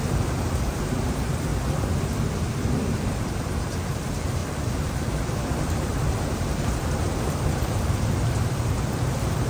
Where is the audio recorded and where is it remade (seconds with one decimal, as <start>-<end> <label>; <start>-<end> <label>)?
0.0-1.5 remade; 1.5-2.1 recorded; 2.1-5.9 remade; 5.9-6.8 recorded; 6.8-9.5 remade